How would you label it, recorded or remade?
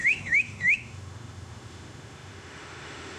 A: remade